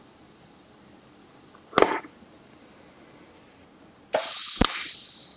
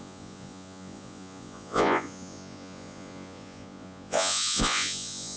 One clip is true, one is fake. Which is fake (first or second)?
second